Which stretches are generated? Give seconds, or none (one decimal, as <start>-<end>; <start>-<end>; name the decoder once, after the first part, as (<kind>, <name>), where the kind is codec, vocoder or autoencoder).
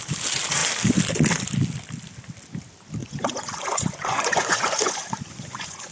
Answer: 3.0-5.9 (vocoder, Vocos)